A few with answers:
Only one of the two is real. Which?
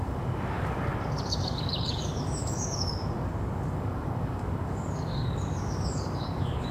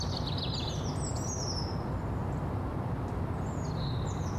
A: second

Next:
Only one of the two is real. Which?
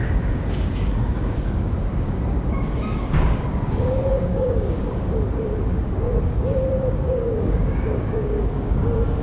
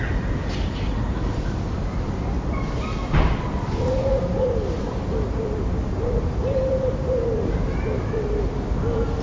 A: second